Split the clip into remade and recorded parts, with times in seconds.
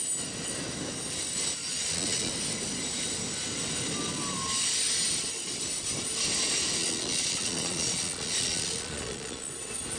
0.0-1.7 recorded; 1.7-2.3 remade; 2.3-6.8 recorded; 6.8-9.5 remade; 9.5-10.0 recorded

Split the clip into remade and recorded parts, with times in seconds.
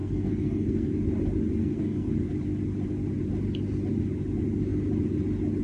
0.0-0.9 remade; 0.9-1.6 recorded; 1.6-2.1 remade; 2.1-5.6 recorded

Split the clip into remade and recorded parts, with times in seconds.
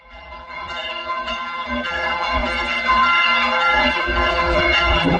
0.0-5.2 remade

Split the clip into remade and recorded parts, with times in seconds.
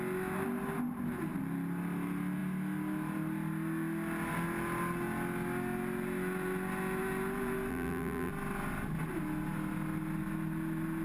0.0-7.7 recorded; 7.7-8.3 remade; 8.3-11.0 recorded